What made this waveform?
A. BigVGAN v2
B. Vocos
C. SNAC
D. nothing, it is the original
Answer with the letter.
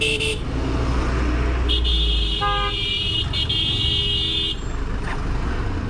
D